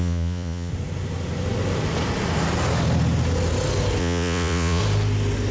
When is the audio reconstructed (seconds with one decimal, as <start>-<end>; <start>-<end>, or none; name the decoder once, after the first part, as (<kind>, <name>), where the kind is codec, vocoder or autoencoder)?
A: 0.0-0.7 (vocoder, Vocos); 4.0-4.8